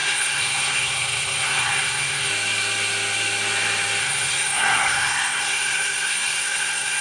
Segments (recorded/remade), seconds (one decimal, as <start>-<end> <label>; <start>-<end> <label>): 0.0-2.3 remade; 2.3-4.0 recorded; 4.0-7.0 remade